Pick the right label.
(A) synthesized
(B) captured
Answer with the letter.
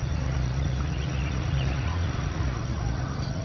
A